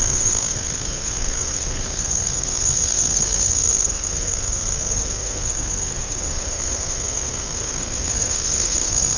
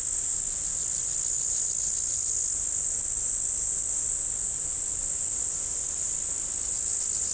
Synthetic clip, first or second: first